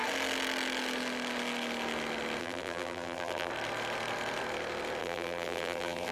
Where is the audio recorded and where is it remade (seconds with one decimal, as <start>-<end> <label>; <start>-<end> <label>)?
0.0-2.4 recorded; 2.4-3.5 remade; 3.5-5.0 recorded; 5.0-6.1 remade